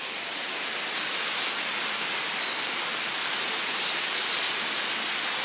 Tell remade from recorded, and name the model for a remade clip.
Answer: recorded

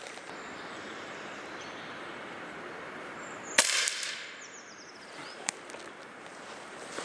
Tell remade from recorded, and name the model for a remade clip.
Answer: remade, vocoder, BigVGAN v2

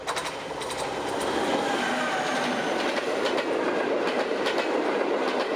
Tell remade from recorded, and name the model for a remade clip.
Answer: recorded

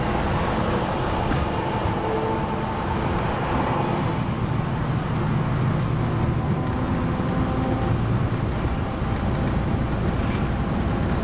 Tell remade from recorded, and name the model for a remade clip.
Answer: recorded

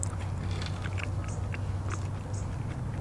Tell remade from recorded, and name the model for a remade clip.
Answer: recorded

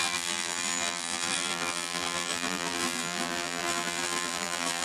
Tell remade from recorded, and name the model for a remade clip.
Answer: remade, vocoder, BigVGAN v2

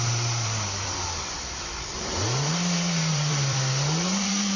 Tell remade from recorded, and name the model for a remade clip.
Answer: remade, vocoder, BigVGAN v2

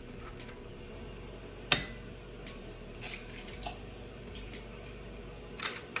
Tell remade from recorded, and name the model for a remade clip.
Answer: recorded